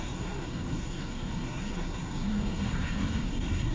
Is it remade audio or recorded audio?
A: remade